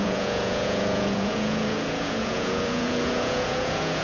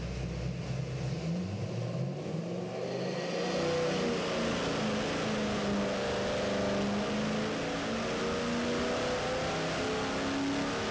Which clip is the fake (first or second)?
first